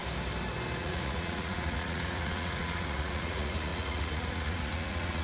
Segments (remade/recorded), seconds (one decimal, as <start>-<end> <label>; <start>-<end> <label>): 0.0-0.8 recorded; 0.8-5.2 remade